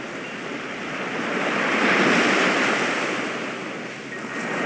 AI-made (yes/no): no